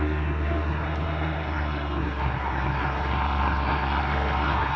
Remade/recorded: remade